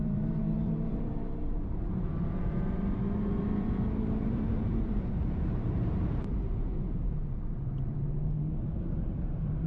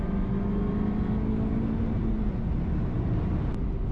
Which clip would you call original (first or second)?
second